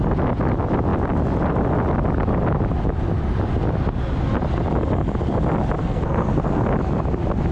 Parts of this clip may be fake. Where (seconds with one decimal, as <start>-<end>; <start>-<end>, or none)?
5.8-6.6